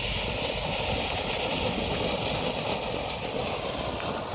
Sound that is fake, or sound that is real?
real